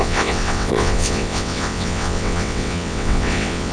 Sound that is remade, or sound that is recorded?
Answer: remade